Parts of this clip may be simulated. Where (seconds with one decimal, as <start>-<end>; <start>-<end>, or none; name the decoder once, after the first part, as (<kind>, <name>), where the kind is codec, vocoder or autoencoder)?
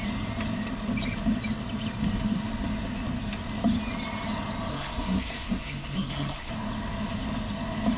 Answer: 4.7-6.5 (codec, SNAC)